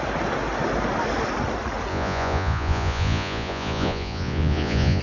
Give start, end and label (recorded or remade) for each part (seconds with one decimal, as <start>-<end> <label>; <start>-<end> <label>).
0.0-1.9 recorded; 1.9-5.0 remade